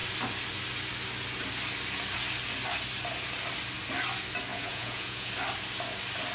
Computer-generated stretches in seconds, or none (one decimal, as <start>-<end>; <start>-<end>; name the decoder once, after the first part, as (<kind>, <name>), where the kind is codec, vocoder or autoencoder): 4.5-5.3 (vocoder, Vocos)